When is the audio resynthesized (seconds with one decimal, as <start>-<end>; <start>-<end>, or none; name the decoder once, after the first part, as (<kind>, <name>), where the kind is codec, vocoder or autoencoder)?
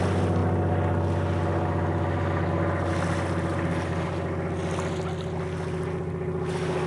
none